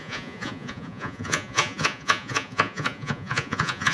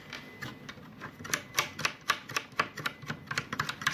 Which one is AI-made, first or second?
first